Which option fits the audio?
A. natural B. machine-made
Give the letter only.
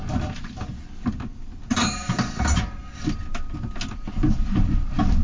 A